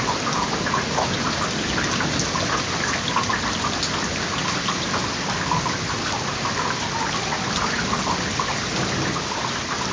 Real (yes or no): yes